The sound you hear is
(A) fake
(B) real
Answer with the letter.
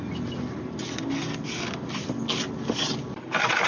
B